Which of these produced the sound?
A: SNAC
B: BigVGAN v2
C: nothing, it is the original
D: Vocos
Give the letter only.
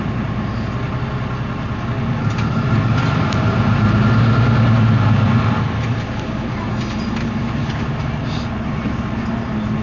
C